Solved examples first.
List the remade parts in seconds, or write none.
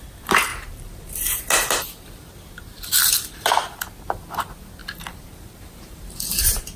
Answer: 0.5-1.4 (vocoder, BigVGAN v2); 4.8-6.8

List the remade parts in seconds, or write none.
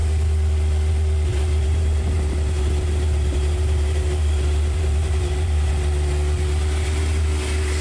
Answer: 1.3-5.7 (vocoder, BigVGAN v2)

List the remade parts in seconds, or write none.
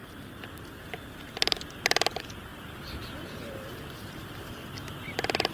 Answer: 0.0-4.6 (vocoder, BigVGAN v2)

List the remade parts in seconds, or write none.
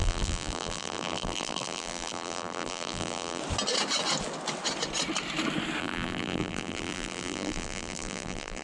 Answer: 0.0-3.4 (vocoder, BigVGAN v2); 5.8-8.6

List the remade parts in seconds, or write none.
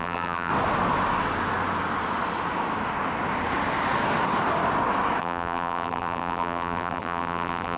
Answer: 0.0-0.5 (vocoder, BigVGAN v2); 5.2-7.8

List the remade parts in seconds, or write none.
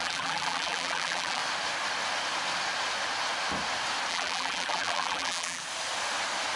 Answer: 0.0-1.4 (vocoder, BigVGAN v2); 4.1-5.6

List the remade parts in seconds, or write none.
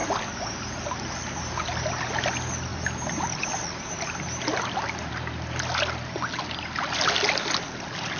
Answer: 0.0-1.8 (vocoder, BigVGAN v2)